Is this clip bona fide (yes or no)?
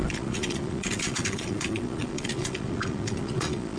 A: no